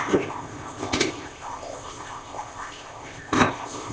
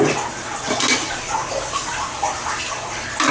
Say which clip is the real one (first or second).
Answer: second